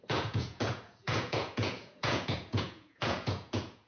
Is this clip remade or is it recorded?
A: remade